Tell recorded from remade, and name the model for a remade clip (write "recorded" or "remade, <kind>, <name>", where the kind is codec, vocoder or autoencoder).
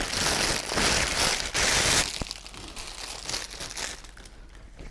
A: recorded